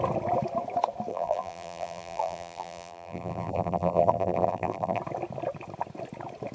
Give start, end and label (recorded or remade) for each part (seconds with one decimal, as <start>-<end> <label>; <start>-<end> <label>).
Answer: 0.0-1.1 recorded; 1.1-5.0 remade; 5.0-6.5 recorded